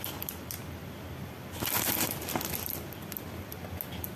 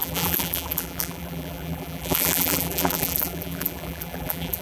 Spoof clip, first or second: second